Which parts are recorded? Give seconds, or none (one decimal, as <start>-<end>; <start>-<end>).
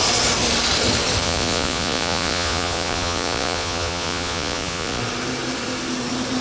0.0-1.2; 5.0-6.4